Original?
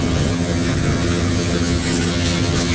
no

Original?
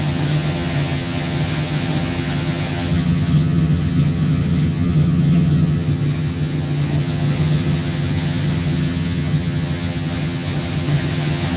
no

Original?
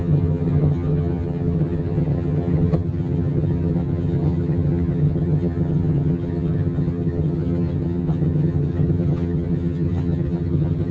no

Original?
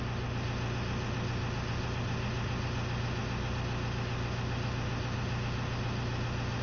yes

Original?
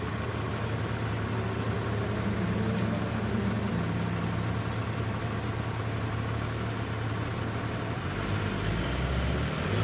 yes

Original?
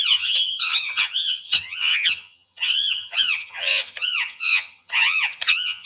no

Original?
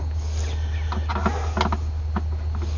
yes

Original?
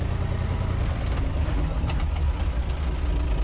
yes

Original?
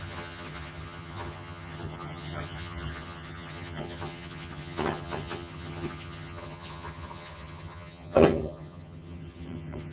no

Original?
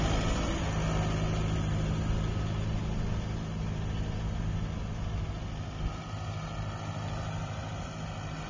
yes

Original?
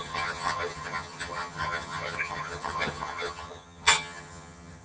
no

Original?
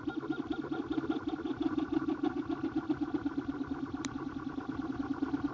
yes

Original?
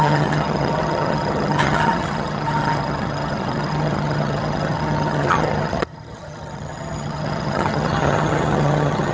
no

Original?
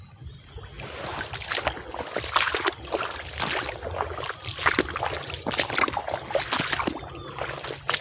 yes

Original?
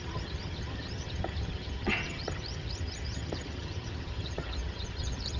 no